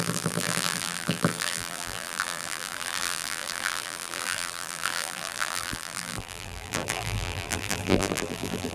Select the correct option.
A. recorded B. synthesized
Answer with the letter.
B